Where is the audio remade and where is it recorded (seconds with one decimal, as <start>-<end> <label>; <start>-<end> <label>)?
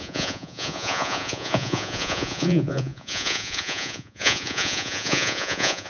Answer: 0.0-5.9 remade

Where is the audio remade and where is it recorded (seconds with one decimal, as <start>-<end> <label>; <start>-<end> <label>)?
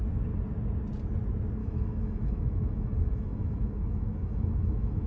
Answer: 0.0-1.6 recorded; 1.6-5.1 remade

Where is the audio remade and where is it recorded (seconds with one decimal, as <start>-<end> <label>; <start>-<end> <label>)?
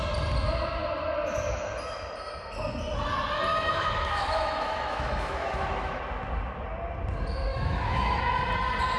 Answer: 0.0-3.5 recorded; 3.5-6.0 remade; 6.0-7.5 recorded; 7.5-8.2 remade; 8.2-9.0 recorded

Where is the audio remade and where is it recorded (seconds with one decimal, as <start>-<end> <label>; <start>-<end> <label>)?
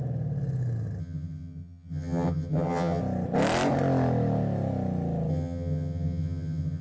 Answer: 0.0-1.0 recorded; 1.0-3.0 remade; 3.0-5.3 recorded; 5.3-6.8 remade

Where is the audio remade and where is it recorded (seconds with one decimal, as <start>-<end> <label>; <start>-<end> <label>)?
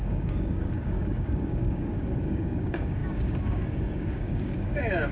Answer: 0.0-5.1 remade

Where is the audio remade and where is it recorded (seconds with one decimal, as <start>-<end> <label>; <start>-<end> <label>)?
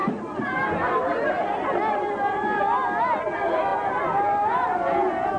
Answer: 0.0-5.4 recorded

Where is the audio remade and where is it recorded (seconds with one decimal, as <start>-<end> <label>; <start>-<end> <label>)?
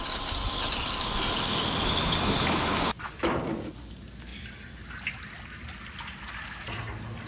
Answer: 0.0-7.3 recorded